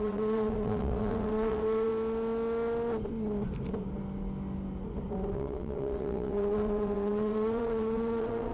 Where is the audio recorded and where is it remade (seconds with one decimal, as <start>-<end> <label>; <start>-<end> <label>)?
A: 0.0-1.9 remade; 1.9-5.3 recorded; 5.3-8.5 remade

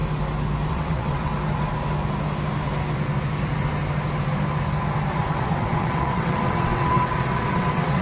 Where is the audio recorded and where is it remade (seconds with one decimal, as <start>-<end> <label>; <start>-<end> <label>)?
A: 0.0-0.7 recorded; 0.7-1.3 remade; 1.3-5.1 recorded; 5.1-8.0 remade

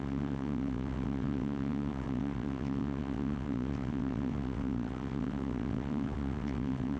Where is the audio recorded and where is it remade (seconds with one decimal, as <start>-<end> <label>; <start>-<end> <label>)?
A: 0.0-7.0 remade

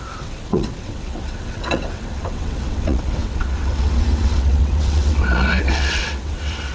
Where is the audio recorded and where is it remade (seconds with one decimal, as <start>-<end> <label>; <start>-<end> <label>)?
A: 0.0-6.7 remade

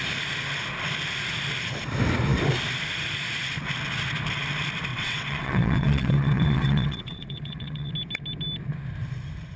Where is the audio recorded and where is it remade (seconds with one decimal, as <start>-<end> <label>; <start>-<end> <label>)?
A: 0.0-4.9 recorded; 4.9-7.9 remade; 7.9-9.6 recorded

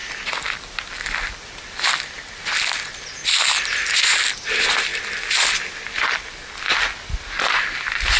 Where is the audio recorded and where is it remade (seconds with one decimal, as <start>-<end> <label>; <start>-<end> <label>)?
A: 0.0-8.2 recorded

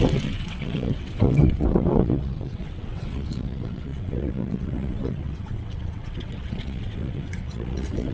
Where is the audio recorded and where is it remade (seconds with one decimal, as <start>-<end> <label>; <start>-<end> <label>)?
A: 0.0-8.1 remade